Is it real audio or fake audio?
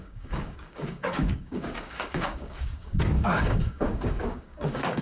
fake